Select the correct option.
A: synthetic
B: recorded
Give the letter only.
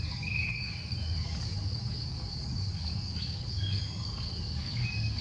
A